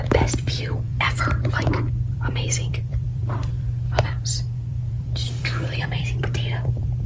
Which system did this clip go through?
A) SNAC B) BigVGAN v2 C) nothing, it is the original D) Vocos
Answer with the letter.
B